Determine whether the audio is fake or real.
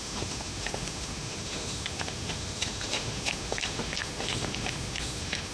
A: fake